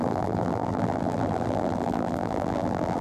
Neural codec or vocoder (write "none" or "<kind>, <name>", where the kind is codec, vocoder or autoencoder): vocoder, BigVGAN v2